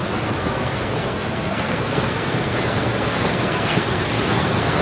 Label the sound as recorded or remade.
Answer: remade